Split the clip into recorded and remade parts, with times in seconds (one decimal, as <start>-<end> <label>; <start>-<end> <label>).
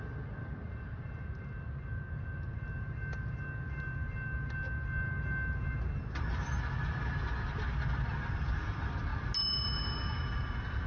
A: 0.0-10.9 recorded